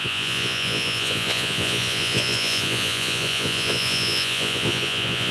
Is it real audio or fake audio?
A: fake